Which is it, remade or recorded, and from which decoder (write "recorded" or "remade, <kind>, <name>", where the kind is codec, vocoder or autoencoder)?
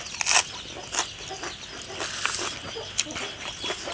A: recorded